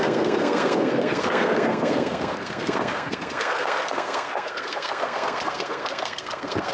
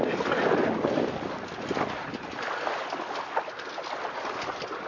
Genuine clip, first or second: second